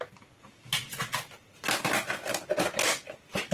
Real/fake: real